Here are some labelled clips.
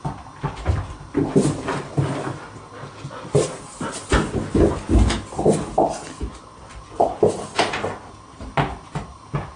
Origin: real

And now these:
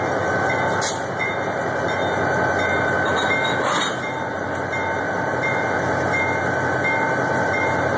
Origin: real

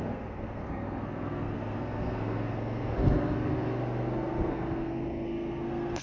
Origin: fake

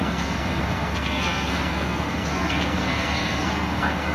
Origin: fake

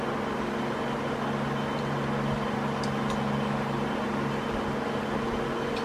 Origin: real